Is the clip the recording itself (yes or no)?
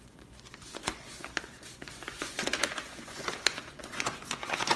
no